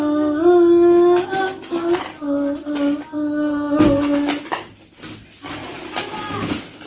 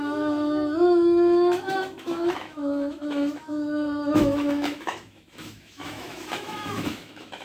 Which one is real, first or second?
first